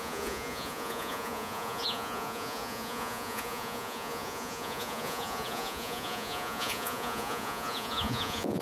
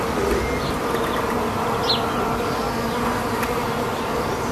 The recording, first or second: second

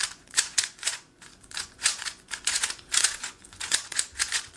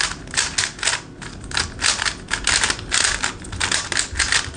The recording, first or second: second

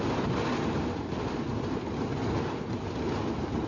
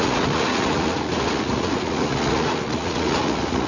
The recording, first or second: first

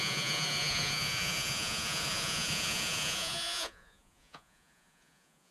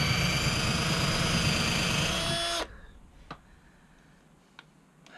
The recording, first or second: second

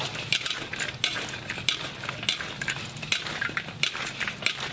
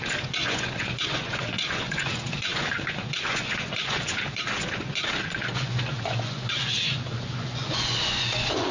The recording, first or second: first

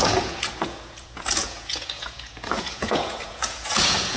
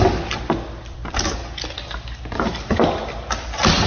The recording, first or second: second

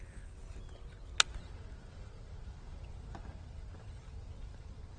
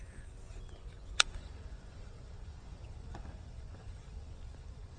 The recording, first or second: first